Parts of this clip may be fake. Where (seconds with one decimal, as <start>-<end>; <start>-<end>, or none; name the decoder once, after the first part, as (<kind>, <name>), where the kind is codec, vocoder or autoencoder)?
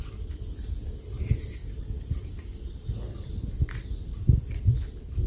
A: none